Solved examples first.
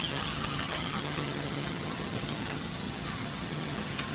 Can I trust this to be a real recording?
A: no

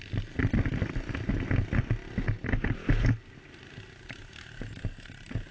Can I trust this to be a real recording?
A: yes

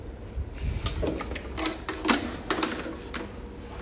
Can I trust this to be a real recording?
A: yes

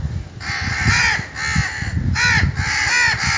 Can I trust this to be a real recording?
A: yes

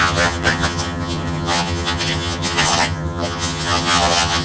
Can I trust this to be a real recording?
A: no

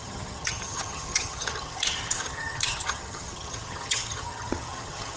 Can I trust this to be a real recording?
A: no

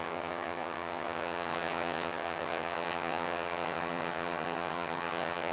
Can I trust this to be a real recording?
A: no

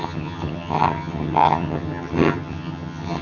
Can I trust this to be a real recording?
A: no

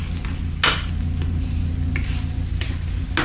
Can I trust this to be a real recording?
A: yes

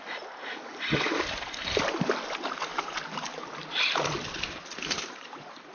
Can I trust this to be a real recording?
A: yes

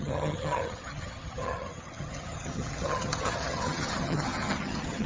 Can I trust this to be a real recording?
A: no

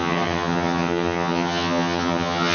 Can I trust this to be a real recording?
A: no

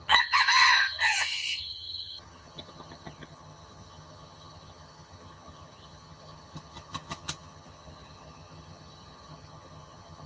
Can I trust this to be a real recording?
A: no